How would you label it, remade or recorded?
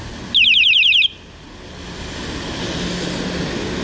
recorded